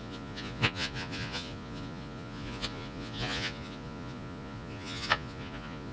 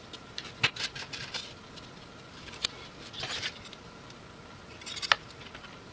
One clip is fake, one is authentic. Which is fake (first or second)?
first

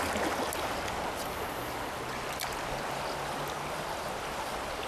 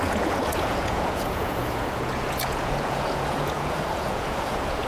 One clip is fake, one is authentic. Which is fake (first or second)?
second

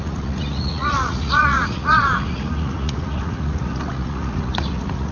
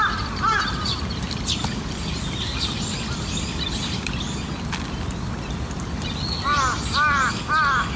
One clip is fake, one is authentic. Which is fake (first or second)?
first